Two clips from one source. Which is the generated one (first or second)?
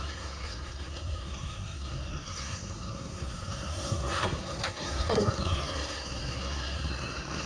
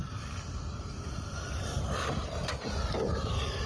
first